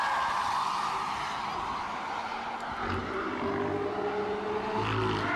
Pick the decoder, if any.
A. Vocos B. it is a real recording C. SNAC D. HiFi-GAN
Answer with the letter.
B